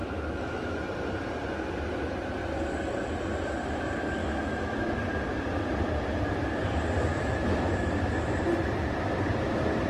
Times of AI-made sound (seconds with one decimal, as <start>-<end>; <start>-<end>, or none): 0.0-0.8; 4.2-5.0; 7.1-8.1